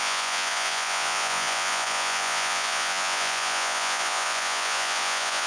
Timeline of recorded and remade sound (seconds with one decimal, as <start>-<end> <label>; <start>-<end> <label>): 0.0-5.5 remade